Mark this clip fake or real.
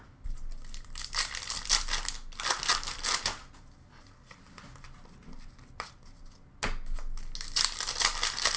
real